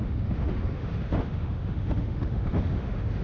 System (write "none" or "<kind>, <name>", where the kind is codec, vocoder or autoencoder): autoencoder, DAC-VAE